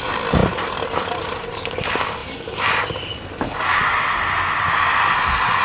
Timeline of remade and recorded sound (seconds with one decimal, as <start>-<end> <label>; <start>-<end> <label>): 0.0-5.6 recorded